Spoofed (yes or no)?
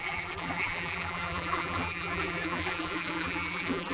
yes